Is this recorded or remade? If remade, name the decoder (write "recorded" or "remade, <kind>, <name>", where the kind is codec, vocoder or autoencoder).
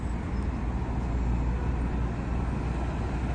recorded